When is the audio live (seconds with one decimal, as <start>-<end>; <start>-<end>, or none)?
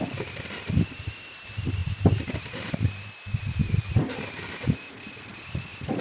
0.0-6.0